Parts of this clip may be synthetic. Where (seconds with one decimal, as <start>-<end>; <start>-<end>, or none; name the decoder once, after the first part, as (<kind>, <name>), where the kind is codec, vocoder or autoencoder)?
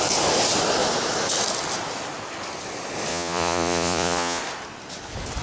3.1-4.4 (vocoder, Vocos)